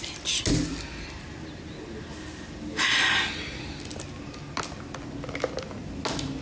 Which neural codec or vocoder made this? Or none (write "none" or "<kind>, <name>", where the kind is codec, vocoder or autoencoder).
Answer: none